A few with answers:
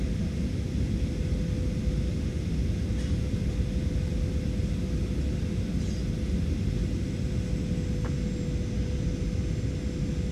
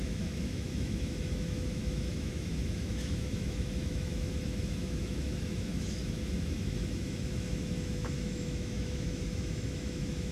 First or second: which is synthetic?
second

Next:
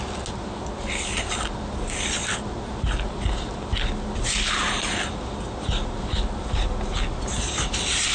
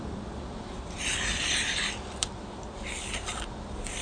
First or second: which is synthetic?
second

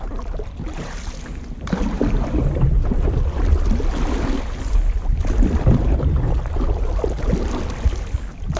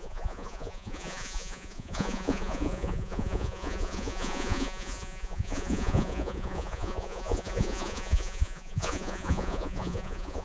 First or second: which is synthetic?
second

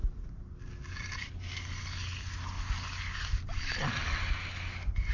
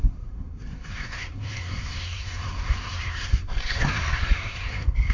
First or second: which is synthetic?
second